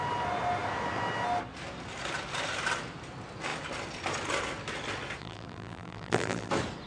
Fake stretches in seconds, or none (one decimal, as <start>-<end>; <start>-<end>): 5.2-6.5